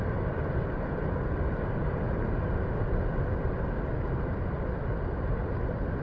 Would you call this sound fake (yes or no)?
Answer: no